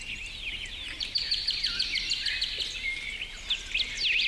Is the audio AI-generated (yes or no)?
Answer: no